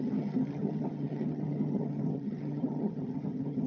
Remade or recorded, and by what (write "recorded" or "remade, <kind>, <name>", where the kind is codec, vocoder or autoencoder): remade, vocoder, HiFi-GAN